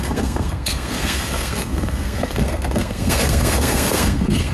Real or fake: fake